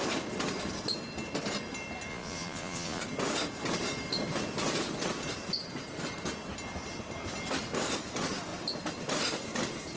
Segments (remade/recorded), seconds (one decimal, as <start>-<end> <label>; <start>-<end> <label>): 0.0-2.1 recorded; 2.1-3.0 remade; 3.0-10.0 recorded